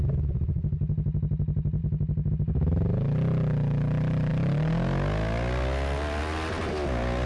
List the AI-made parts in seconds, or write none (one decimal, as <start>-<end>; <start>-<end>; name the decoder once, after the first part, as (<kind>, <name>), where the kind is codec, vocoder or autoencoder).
none